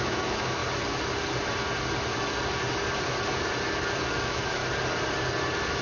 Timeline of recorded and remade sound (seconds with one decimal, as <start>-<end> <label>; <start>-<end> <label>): 0.0-0.6 remade; 0.6-4.1 recorded; 4.1-4.6 remade; 4.6-5.8 recorded